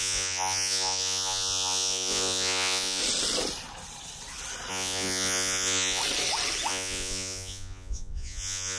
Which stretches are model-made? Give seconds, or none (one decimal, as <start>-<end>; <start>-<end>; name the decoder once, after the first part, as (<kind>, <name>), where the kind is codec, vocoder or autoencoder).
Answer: 0.0-3.0 (vocoder, Vocos); 4.7-6.0; 6.7-8.8